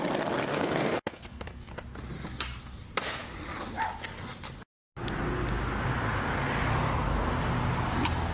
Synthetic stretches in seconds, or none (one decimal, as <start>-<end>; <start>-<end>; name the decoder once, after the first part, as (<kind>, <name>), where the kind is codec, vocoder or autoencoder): 0.5-1.7 (codec, SNAC)